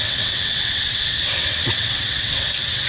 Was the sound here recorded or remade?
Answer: remade